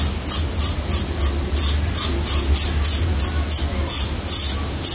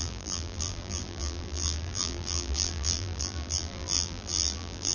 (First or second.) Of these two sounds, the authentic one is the first